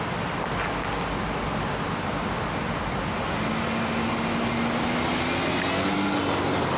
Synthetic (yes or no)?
no